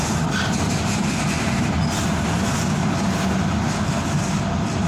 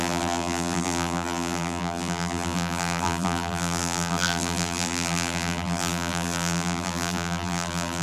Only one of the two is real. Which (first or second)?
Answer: first